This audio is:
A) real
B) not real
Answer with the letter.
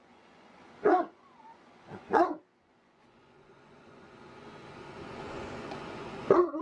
B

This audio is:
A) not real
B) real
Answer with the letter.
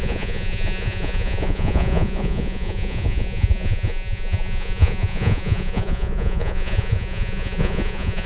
A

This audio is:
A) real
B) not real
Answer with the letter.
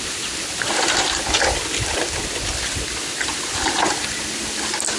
A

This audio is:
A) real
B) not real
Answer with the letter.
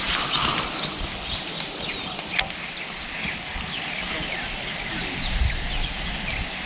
A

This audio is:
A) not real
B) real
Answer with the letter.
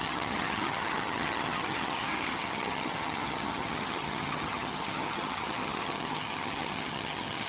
A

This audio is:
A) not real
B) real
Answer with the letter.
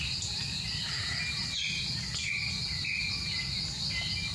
B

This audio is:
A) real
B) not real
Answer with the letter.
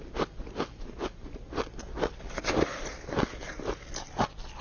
A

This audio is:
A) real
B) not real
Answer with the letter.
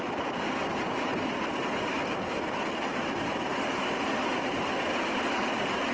B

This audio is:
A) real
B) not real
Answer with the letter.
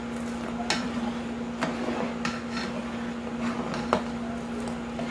A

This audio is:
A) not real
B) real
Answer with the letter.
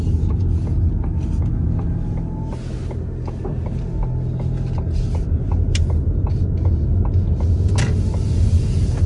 B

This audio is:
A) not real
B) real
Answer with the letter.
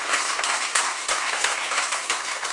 A